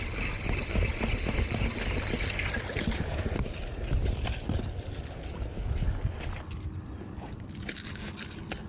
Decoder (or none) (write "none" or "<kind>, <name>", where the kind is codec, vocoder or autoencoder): none